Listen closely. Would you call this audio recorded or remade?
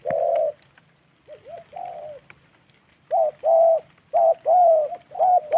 recorded